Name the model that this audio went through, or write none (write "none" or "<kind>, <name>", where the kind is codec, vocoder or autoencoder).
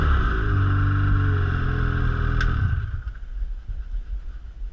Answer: none